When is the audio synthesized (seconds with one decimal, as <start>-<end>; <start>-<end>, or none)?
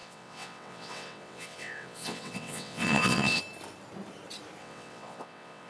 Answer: 0.0-3.4; 4.6-5.7